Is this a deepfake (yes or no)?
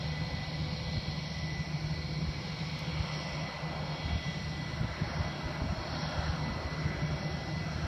no